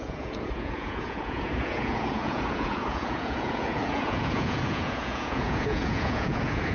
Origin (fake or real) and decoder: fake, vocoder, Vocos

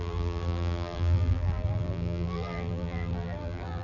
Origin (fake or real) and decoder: fake, vocoder, BigVGAN v2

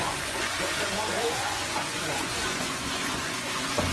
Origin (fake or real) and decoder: fake, vocoder, Vocos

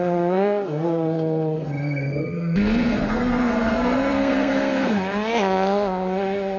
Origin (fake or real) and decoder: fake, codec, SNAC